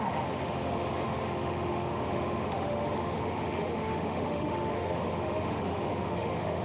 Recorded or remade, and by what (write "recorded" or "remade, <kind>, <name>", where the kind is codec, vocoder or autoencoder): remade, autoencoder, DAC-VAE